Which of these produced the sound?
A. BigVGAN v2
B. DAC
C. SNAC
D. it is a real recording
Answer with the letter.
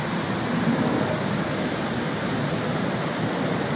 D